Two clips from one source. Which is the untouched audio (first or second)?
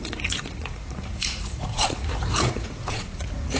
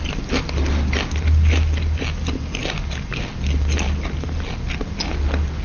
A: second